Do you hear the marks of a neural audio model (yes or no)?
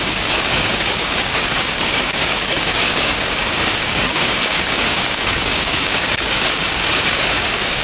yes